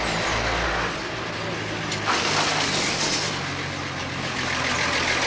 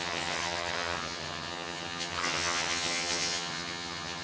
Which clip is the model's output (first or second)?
second